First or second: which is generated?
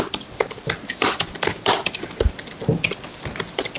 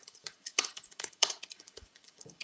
second